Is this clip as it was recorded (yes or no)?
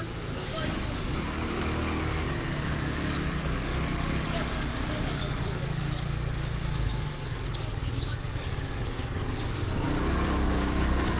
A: no